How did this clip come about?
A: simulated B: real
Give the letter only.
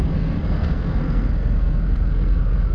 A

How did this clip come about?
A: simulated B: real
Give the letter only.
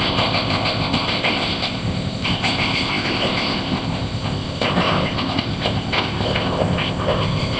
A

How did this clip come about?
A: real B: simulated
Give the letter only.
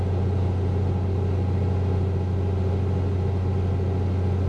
A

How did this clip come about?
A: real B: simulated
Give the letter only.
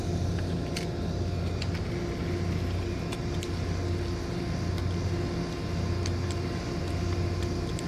A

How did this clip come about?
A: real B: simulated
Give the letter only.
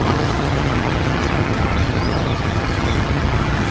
B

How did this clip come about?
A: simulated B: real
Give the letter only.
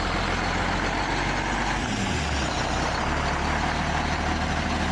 B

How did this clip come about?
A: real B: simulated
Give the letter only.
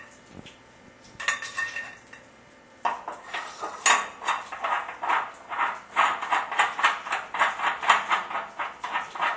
A